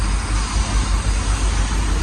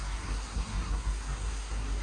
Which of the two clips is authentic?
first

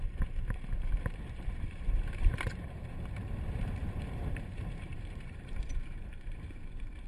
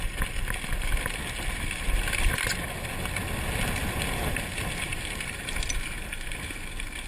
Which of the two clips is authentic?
second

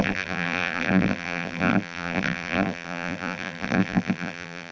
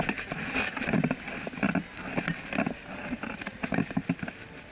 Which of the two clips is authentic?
second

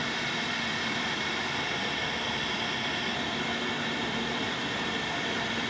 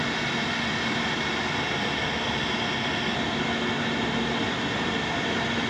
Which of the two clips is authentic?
second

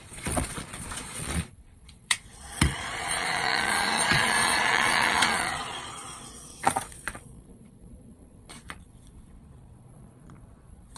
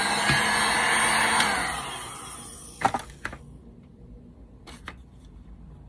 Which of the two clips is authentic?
second